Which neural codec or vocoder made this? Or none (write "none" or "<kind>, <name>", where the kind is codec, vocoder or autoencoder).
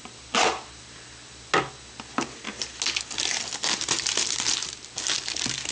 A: none